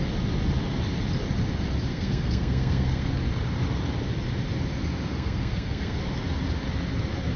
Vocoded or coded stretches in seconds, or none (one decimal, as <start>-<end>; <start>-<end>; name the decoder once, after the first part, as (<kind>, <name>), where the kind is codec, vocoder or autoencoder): 1.9-3.1 (codec, SNAC); 5.1-6.0